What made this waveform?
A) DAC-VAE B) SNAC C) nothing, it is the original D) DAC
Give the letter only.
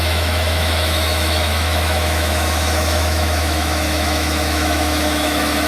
A